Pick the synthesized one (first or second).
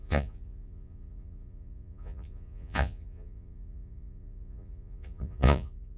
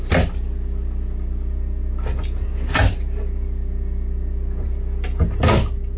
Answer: first